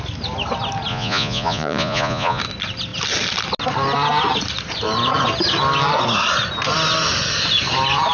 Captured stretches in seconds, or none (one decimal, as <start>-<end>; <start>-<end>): 0.0-0.9; 2.4-8.1